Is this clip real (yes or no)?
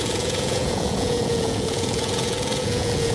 no